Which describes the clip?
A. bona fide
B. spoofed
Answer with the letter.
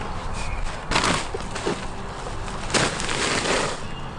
A